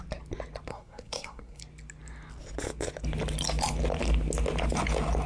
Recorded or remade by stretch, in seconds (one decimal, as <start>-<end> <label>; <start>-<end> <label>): 0.0-0.7 recorded; 0.7-1.6 remade; 1.6-5.3 recorded